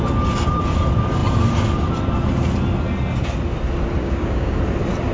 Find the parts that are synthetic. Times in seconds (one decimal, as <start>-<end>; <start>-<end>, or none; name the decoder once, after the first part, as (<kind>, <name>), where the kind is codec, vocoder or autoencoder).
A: 4.0-4.6 (codec, DAC)